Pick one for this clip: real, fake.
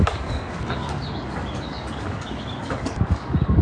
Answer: fake